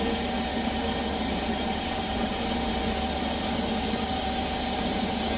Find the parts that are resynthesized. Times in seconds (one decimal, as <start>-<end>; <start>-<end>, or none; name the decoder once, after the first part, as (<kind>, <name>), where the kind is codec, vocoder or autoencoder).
none